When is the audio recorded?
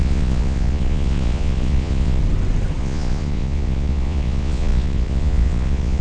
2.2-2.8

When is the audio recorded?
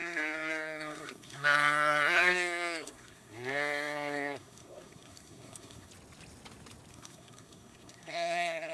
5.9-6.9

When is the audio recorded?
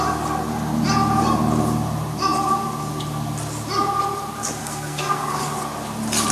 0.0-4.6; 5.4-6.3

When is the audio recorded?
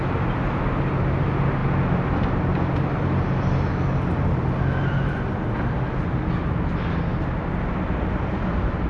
0.0-8.9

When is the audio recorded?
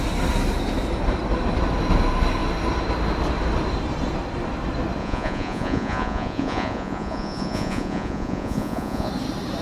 0.0-5.0; 9.1-9.6